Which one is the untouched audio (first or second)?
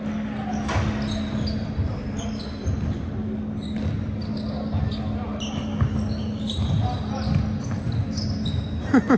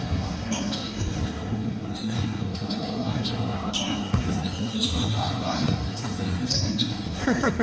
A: first